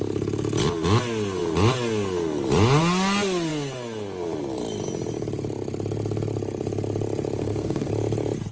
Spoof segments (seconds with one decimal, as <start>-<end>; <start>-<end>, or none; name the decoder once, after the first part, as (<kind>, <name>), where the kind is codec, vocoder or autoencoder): 7.4-7.9 (codec, SNAC)